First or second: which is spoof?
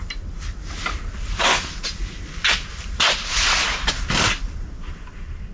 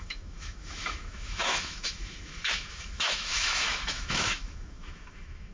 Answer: second